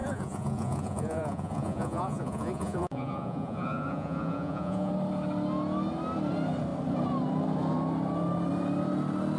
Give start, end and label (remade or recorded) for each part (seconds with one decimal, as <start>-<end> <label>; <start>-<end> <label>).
0.0-4.9 remade; 4.9-9.4 recorded